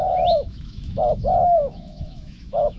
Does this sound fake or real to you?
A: fake